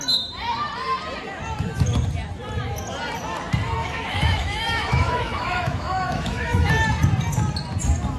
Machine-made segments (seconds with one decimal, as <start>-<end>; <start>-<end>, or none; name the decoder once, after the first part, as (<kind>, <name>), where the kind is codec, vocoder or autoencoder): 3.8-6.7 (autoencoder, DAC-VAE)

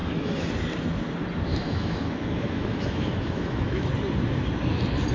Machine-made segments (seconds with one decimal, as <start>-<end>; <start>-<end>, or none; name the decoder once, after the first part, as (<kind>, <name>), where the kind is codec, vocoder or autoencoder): 0.0-0.5 (autoencoder, DAC-VAE); 1.5-3.9

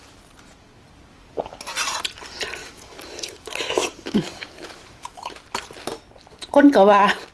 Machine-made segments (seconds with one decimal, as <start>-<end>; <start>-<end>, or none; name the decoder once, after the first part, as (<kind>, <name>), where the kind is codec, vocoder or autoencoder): 2.6-5.3 (autoencoder, DAC-VAE)